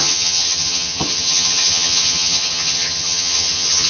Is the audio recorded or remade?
remade